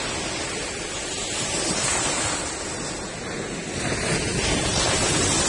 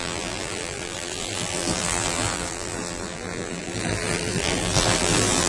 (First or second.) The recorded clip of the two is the first